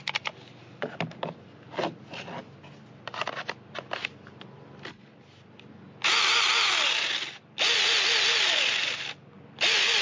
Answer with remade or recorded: recorded